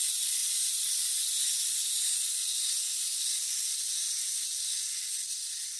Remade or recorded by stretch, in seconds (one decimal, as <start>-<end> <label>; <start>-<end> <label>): 0.0-0.4 recorded; 0.4-0.9 remade; 0.9-5.8 recorded